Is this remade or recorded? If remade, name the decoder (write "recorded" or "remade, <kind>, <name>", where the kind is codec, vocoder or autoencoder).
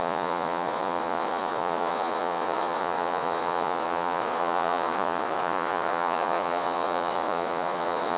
remade, vocoder, Vocos